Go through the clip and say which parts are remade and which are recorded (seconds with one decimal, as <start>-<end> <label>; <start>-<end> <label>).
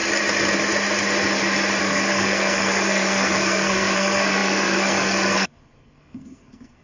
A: 0.0-1.8 recorded; 1.8-6.8 remade